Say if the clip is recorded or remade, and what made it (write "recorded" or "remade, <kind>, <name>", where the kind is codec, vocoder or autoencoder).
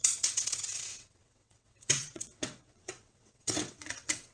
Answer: remade, vocoder, WaveNeXt